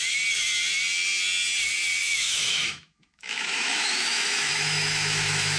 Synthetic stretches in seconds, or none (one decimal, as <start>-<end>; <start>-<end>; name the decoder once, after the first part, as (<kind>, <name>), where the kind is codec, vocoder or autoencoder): 2.0-5.6 (autoencoder, DAC-VAE)